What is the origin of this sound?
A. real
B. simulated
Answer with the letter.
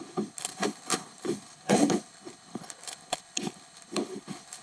B